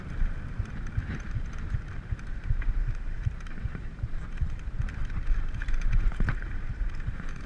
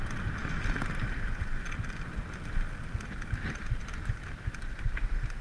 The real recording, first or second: second